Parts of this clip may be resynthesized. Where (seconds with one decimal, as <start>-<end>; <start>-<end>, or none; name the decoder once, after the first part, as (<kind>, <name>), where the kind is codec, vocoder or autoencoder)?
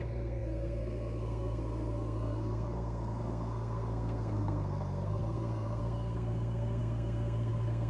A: 0.0-7.9 (codec, SNAC)